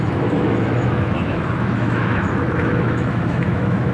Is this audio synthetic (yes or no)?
yes